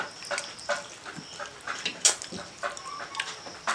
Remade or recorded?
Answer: recorded